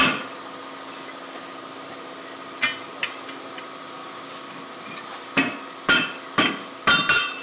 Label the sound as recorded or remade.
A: recorded